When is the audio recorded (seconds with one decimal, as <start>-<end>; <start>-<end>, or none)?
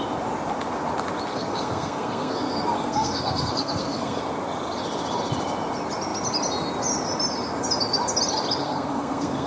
0.0-1.3; 4.2-8.6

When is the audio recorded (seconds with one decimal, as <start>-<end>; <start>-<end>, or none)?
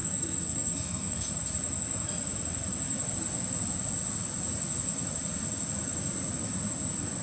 1.3-7.2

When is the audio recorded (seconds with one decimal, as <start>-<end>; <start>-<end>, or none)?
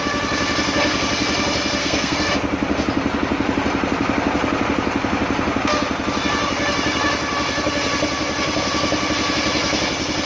0.0-1.8; 2.3-10.3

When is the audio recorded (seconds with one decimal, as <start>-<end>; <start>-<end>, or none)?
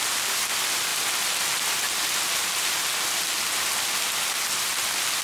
0.0-5.2